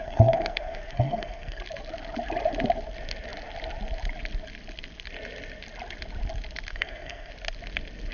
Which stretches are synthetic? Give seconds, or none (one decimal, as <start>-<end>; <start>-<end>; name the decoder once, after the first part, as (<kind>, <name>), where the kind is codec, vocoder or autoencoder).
0.0-1.6 (codec, SNAC); 6.7-7.3